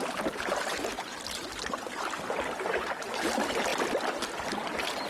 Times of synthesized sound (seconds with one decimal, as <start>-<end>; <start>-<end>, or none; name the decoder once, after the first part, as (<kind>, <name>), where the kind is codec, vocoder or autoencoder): none